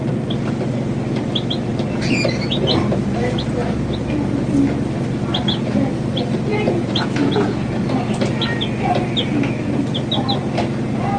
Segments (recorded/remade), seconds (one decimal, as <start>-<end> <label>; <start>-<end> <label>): 0.0-6.5 recorded; 6.5-7.7 remade; 7.7-11.2 recorded